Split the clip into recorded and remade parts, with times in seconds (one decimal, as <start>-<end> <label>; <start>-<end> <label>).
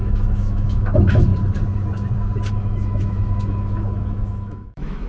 0.0-1.3 remade; 1.3-2.5 recorded; 2.5-5.1 remade